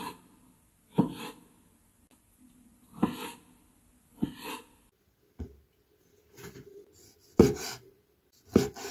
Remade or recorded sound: recorded